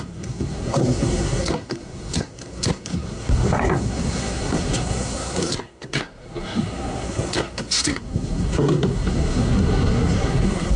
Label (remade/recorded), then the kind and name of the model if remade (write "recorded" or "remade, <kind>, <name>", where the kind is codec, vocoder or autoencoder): remade, codec, SNAC